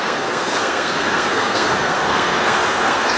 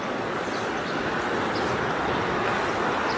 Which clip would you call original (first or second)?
second